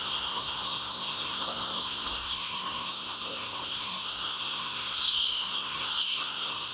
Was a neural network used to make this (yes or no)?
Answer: yes